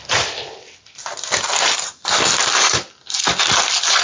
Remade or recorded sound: recorded